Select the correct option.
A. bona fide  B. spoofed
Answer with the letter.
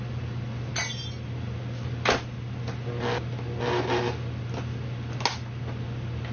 A